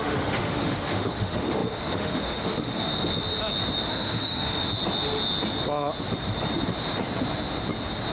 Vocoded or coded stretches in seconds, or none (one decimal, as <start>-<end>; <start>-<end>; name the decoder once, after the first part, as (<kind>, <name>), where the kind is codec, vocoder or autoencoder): 0.0-2.9 (autoencoder, DAC-VAE); 3.9-4.7